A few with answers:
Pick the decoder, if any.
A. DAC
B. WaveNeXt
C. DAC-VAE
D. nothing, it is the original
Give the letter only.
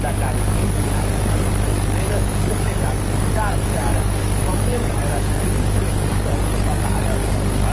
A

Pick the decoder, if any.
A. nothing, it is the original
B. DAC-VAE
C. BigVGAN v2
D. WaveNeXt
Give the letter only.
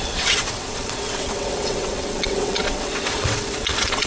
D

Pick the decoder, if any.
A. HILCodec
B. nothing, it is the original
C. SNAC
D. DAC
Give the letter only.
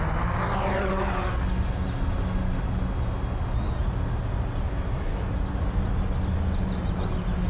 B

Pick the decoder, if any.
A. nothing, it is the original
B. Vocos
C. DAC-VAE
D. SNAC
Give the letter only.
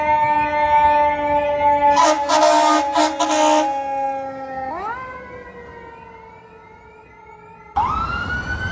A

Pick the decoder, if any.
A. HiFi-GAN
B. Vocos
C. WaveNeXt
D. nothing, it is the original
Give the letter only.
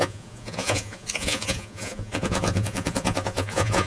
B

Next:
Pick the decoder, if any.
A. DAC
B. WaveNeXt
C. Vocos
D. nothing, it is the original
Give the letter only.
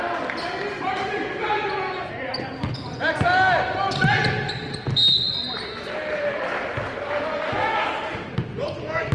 D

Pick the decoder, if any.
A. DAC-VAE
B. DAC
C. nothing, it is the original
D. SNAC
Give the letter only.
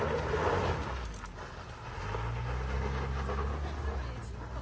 C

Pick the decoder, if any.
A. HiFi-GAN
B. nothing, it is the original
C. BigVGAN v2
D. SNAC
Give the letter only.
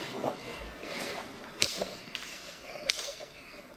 D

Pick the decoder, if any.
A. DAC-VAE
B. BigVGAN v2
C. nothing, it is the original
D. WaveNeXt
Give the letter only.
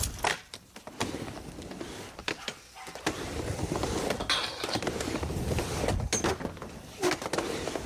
C